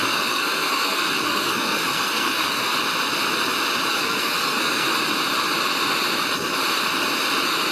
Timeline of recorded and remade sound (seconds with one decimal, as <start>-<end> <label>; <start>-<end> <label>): 0.0-2.7 remade; 2.7-3.9 recorded; 3.9-4.9 remade; 4.9-7.7 recorded